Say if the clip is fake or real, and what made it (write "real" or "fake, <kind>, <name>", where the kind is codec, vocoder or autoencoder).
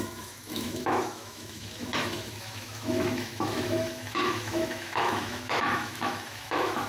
fake, autoencoder, DAC-VAE